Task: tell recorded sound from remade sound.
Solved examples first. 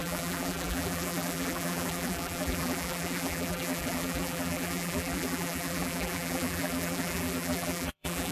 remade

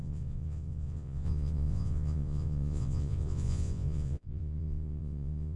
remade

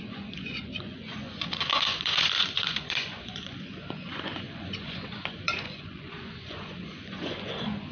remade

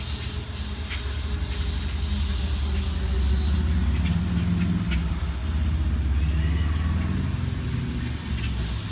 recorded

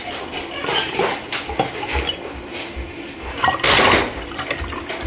recorded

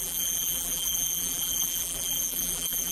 remade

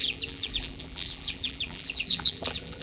remade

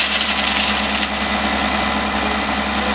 recorded